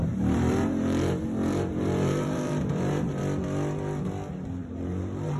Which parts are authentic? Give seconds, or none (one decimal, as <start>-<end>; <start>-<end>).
3.2-4.6